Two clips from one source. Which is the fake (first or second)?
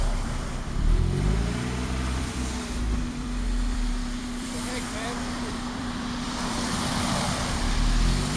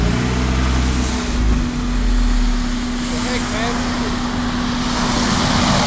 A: first